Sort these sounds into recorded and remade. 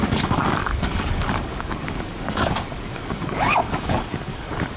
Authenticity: remade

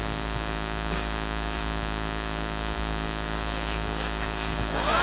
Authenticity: remade